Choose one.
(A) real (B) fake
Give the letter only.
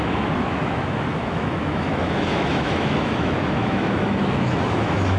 B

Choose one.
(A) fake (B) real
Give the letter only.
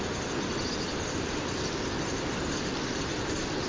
A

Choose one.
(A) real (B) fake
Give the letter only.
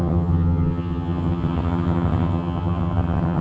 B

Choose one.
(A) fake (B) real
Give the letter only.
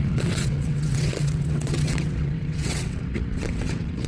A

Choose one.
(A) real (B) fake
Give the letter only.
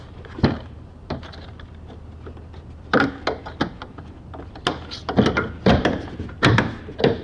A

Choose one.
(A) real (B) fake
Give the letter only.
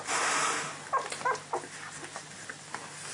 A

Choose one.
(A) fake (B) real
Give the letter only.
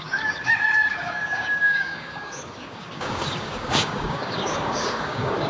A